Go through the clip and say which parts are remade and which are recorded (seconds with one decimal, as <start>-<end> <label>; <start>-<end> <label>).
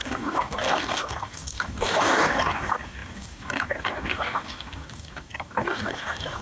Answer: 0.0-6.4 remade